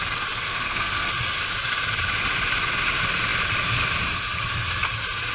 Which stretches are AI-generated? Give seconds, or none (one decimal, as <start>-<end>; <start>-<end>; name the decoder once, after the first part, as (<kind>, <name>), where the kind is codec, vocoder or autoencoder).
0.5-1.1 (codec, SNAC)